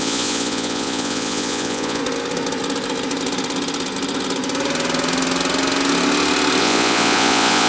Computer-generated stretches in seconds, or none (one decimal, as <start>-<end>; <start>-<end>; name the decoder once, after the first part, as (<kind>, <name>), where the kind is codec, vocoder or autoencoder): 0.0-2.0 (vocoder, Vocos); 6.6-7.7